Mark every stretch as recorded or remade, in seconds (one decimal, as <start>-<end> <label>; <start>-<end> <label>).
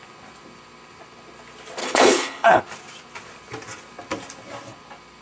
0.0-1.8 recorded; 1.8-2.6 remade; 2.6-5.2 recorded